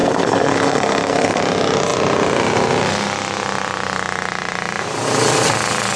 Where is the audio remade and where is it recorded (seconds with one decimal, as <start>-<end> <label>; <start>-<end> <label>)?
0.0-1.4 remade; 1.4-6.0 recorded